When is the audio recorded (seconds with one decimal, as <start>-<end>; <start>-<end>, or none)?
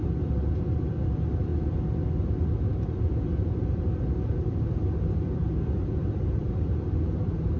1.5-2.3